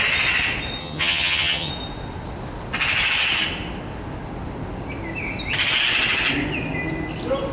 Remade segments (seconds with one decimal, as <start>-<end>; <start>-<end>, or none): 0.8-1.7